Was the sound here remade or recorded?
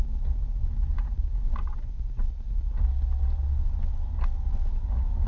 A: recorded